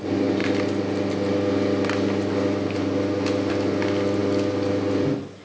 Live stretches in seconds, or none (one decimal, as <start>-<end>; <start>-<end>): 0.0-5.4